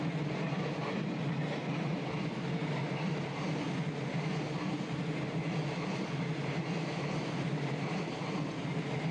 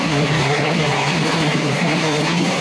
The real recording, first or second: first